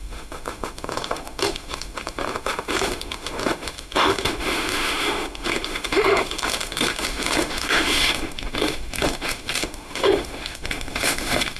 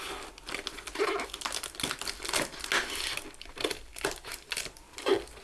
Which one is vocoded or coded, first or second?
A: first